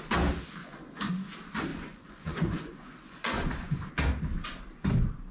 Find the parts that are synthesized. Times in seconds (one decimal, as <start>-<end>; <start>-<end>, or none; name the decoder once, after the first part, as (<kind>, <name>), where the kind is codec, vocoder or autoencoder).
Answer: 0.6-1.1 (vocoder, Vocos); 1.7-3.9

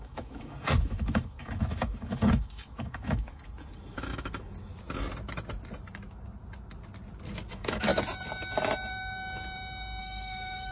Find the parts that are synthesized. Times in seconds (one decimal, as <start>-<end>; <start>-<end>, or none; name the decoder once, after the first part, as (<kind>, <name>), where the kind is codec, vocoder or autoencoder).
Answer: 0.0-4.7 (autoencoder, DAC-VAE); 7.5-7.9; 10.0-10.7

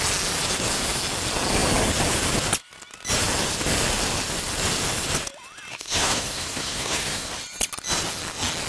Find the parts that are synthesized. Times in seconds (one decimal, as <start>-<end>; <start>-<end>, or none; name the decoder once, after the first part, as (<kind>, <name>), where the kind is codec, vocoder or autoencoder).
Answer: 5.7-7.3 (codec, SNAC)

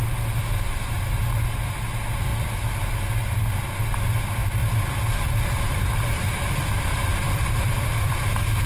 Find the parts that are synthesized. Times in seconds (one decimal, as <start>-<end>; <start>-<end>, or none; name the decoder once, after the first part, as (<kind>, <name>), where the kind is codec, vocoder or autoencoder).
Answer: 2.3-3.0 (vocoder, BigVGAN v2); 4.6-8.2